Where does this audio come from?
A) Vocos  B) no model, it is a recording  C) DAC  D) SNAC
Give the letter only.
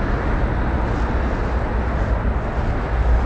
B